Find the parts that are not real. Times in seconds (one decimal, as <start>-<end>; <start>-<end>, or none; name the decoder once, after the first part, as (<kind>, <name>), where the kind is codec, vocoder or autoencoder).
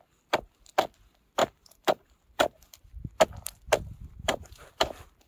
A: 1.4-3.1 (vocoder, BigVGAN v2); 4.0-4.6